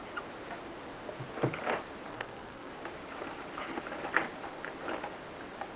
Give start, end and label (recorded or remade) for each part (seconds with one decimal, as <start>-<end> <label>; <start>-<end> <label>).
0.0-2.1 recorded; 2.1-2.7 remade; 2.7-5.8 recorded